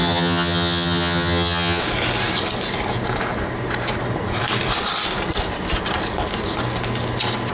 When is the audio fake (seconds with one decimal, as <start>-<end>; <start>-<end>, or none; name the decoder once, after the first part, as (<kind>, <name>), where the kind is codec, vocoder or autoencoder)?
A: 0.0-1.8 (vocoder, HiFi-GAN)